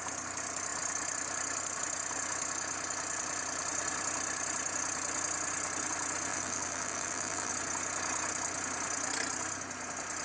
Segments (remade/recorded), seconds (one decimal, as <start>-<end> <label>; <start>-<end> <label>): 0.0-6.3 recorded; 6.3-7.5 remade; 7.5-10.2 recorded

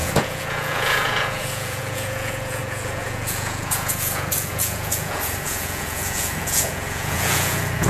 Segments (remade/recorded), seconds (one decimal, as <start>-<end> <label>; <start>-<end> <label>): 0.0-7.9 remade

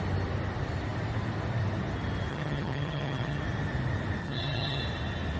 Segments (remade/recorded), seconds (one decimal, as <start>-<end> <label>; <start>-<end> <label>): 0.0-2.3 recorded; 2.3-3.4 remade; 3.4-4.2 recorded; 4.2-4.8 remade; 4.8-5.4 recorded

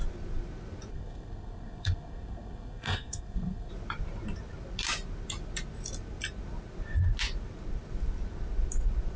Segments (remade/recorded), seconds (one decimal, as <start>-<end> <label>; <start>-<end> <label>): 0.0-0.9 recorded; 0.9-3.7 remade; 3.7-9.2 recorded